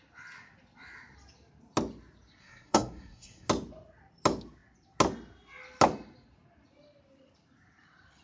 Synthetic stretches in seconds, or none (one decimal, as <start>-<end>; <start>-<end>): 2.4-3.5